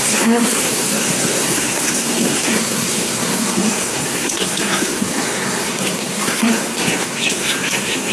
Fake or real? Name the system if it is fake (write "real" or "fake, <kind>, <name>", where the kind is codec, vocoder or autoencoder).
fake, codec, SNAC